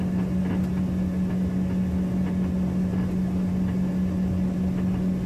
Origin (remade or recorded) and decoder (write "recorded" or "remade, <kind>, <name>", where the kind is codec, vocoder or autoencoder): recorded